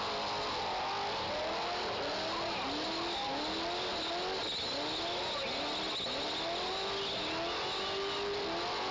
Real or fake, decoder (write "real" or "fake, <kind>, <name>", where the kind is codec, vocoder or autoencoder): real